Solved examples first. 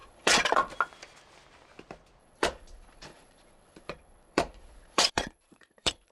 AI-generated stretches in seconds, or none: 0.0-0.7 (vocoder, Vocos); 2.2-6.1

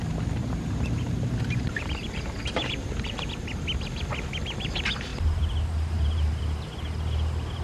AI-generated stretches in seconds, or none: 0.4-3.3 (vocoder, BigVGAN v2); 5.1-6.4